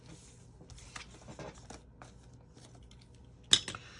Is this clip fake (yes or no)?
no